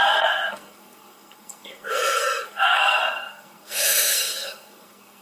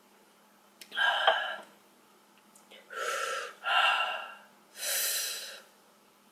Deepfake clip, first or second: first